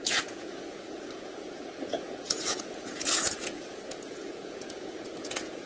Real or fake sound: fake